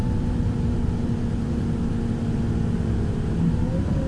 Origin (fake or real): real